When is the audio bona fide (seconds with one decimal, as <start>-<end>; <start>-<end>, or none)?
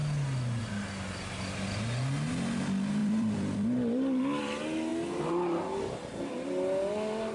0.0-3.0; 4.4-7.3